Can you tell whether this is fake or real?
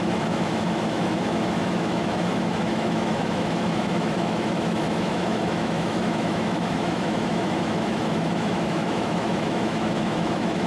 fake